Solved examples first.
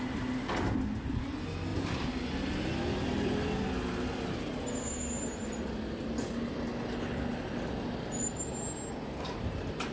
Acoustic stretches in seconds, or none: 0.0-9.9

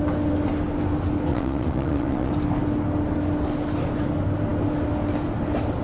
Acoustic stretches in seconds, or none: 0.0-1.3; 2.3-5.8